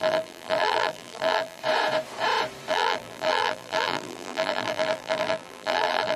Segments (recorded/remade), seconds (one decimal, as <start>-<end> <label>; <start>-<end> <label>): 0.0-1.6 remade; 1.6-2.7 recorded; 2.7-6.2 remade

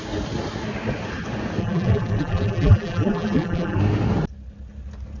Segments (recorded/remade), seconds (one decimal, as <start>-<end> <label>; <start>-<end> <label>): 0.0-1.6 recorded; 1.6-3.8 remade; 3.8-5.2 recorded

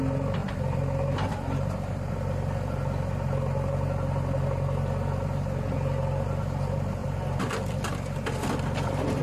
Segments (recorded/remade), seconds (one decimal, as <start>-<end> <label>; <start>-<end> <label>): 0.0-7.0 recorded; 7.0-9.2 remade